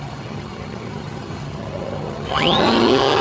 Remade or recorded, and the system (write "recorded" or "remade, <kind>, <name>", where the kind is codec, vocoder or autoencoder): remade, vocoder, HiFi-GAN